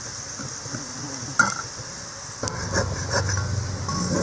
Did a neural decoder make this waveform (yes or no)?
no